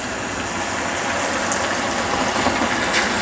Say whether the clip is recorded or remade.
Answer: recorded